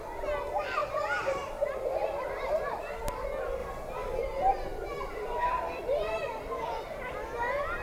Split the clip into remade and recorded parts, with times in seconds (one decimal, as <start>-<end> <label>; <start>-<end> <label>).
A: 0.0-0.8 recorded; 0.8-1.5 remade; 1.5-2.0 recorded; 2.0-2.8 remade; 2.8-3.6 recorded; 3.6-4.2 remade; 4.2-4.7 recorded; 4.7-7.1 remade; 7.1-7.8 recorded